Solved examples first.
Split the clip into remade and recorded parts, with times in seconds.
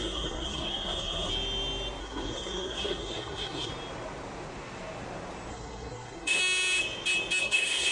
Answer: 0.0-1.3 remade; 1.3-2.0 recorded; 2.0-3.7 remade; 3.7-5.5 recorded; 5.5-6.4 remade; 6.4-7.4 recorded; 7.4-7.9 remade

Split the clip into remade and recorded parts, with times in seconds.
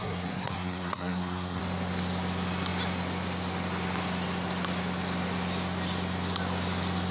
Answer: 0.0-1.6 remade; 1.6-7.1 recorded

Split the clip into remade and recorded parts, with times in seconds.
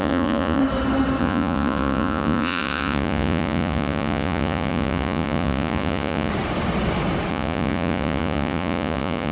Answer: 0.0-0.6 remade; 0.6-1.2 recorded; 1.2-6.3 remade; 6.3-7.3 recorded; 7.3-9.3 remade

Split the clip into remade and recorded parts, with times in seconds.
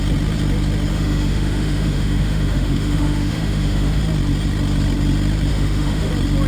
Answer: 0.0-0.9 recorded; 0.9-4.0 remade; 4.0-5.5 recorded; 5.5-6.1 remade; 6.1-6.5 recorded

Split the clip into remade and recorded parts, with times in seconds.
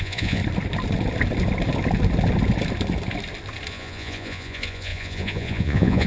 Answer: 0.0-0.4 remade; 0.4-3.7 recorded; 3.7-6.1 remade